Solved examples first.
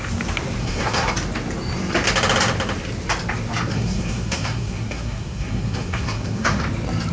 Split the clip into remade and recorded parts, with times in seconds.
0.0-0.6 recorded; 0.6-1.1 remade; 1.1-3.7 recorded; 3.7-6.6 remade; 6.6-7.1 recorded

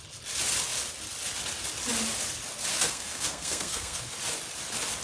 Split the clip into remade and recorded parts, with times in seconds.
0.0-2.7 recorded; 2.7-4.0 remade; 4.0-5.0 recorded

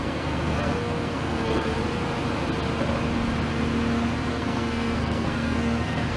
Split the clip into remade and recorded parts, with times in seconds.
0.0-1.7 remade; 1.7-4.3 recorded; 4.3-6.2 remade

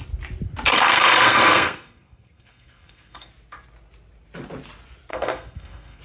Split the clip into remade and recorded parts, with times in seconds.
0.0-0.7 recorded; 0.7-3.3 remade; 3.3-5.1 recorded; 5.1-6.0 remade

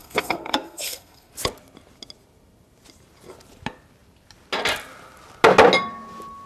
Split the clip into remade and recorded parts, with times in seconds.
0.0-1.3 remade; 1.3-6.5 recorded

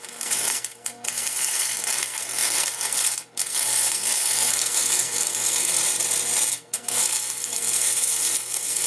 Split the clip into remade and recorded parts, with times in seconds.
0.0-5.8 remade; 5.8-6.5 recorded; 6.5-8.9 remade

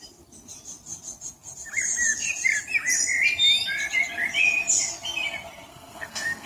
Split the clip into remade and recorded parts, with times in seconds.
0.0-5.7 recorded; 5.7-6.5 remade